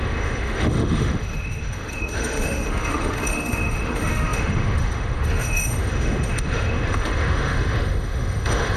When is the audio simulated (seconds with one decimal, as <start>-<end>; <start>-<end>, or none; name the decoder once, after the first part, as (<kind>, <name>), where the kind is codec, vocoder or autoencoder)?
0.0-8.8 (autoencoder, DAC-VAE)